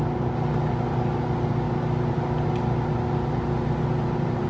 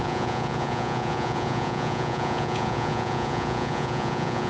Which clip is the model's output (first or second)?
second